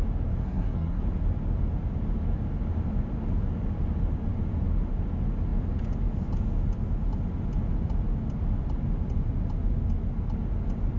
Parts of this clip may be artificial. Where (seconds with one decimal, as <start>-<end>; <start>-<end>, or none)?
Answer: 0.4-1.0